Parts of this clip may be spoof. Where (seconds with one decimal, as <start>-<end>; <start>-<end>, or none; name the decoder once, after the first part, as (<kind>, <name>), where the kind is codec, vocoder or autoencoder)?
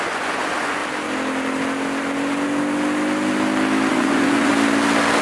0.0-0.8 (vocoder, Vocos); 3.9-4.5